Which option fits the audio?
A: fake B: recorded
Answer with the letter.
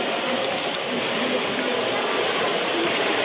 B